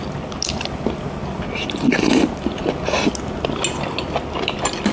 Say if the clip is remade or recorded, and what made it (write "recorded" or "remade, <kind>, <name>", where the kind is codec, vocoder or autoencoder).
recorded